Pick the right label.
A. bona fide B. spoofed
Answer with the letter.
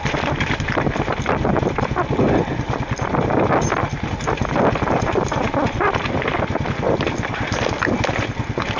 A